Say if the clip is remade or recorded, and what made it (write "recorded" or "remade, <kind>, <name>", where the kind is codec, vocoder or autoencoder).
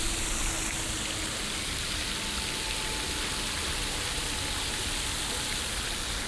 recorded